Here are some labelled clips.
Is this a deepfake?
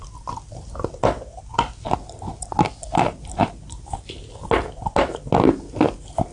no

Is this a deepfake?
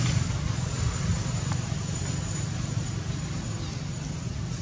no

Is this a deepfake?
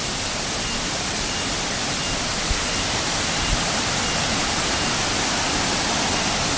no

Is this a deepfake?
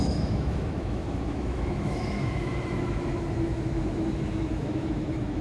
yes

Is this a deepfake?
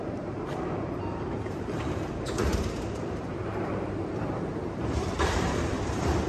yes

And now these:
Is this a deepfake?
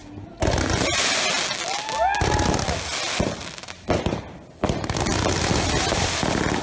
no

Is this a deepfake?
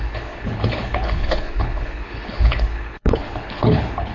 yes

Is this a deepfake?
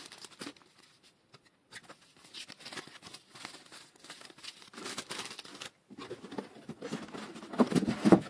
no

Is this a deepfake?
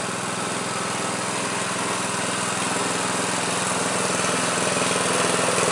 no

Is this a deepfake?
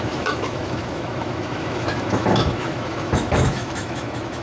yes